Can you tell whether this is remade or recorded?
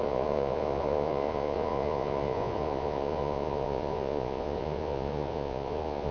remade